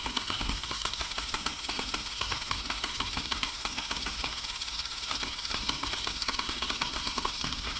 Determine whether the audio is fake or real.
fake